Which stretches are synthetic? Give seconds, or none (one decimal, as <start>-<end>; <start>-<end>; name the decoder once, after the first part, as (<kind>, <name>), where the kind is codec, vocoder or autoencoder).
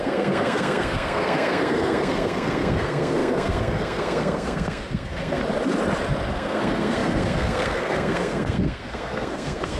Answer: 0.0-5.4 (codec, SNAC); 6.3-9.8